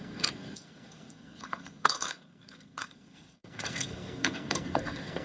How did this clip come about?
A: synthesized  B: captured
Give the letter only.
A